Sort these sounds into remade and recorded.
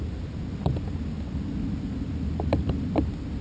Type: recorded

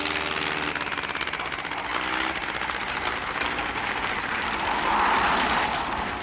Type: recorded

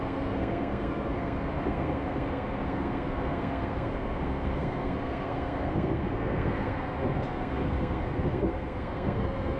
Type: remade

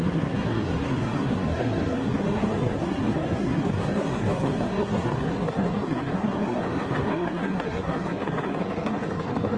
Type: remade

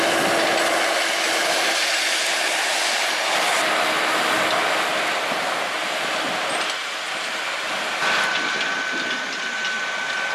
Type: recorded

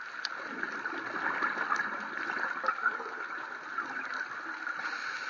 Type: recorded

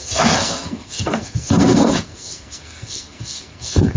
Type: remade